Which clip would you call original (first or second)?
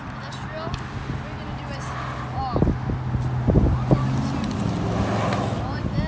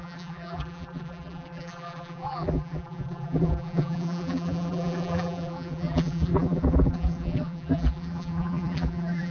first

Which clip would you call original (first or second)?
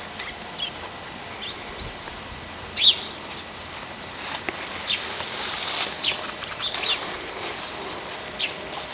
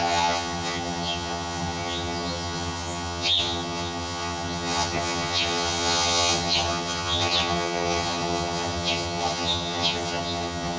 first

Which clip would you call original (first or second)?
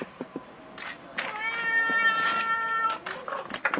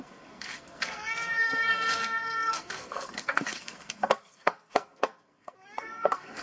first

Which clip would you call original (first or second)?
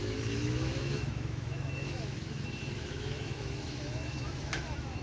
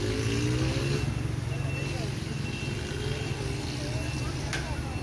second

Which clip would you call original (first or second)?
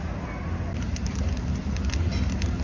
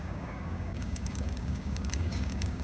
first